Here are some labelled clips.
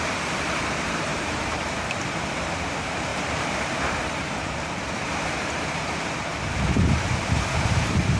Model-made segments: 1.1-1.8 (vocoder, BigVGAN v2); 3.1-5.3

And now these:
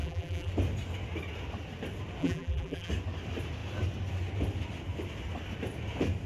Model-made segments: 0.0-0.5 (vocoder, BigVGAN v2); 2.2-2.9

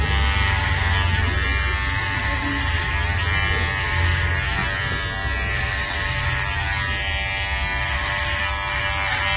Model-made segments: none

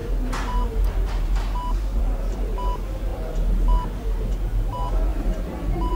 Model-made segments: 5.1-5.9 (vocoder, BigVGAN v2)